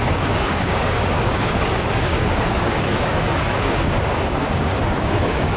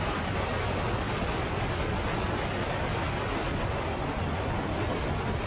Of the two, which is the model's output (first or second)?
first